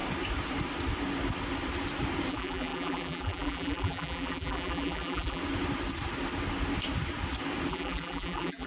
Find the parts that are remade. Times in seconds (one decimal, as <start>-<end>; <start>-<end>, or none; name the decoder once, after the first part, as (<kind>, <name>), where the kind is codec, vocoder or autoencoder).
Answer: 2.3-5.4 (vocoder, BigVGAN v2); 7.7-8.7